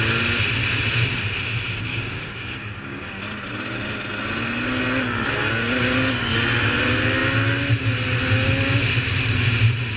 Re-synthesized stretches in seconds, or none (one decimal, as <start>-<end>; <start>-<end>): 1.9-3.1